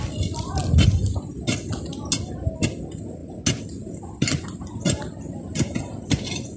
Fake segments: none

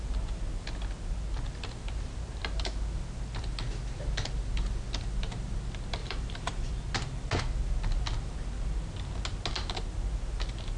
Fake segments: 6.0-6.7

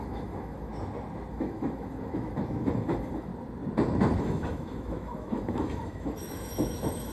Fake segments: 0.0-0.7; 1.3-3.3; 4.2-7.1

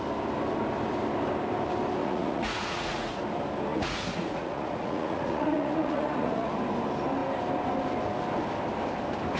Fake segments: 2.0-3.2; 3.7-6.5

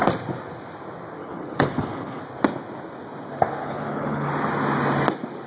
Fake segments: 1.2-2.2; 3.6-4.3

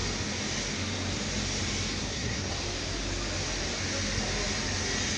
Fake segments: 2.0-2.5

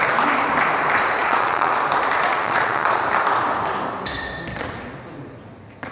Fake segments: 1.2-1.7; 2.3-3.0

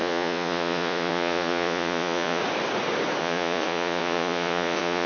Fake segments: 0.0-2.4; 3.2-5.1